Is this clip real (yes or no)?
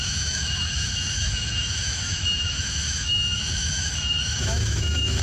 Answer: no